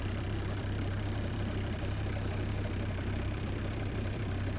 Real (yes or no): no